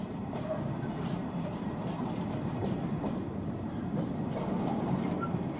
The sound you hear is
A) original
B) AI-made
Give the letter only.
B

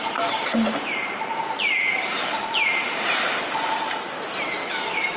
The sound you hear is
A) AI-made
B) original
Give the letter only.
A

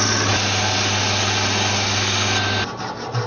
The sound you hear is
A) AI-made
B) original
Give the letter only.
B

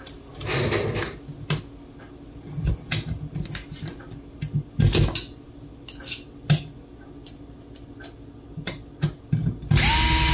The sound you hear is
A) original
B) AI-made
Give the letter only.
A